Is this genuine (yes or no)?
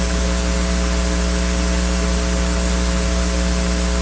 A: yes